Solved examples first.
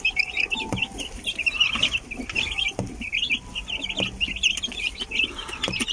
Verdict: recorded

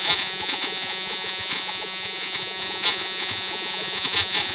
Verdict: remade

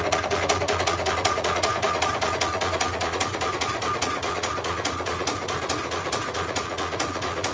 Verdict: remade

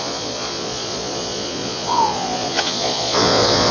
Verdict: remade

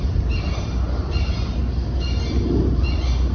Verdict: recorded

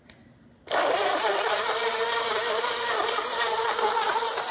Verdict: recorded